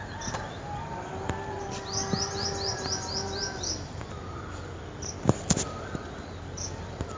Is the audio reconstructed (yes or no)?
no